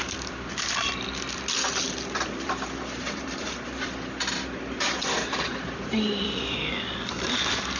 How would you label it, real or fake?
fake